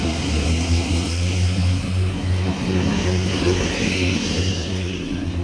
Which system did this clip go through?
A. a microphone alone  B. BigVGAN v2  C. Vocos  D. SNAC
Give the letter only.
D